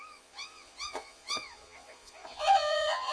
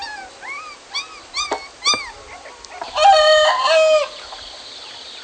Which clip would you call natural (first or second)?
second